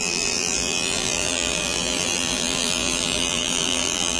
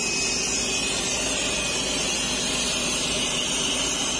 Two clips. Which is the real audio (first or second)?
second